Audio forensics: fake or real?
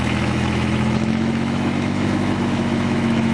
fake